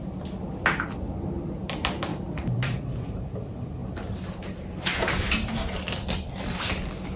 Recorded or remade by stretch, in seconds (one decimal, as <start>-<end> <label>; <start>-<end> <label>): 0.0-2.1 recorded; 2.1-3.3 remade; 3.3-3.8 recorded; 3.8-4.3 remade; 4.3-4.9 recorded; 4.9-5.4 remade; 5.4-7.2 recorded